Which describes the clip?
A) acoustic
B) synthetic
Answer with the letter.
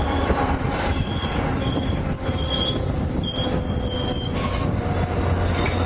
A